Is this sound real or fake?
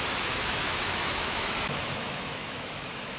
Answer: fake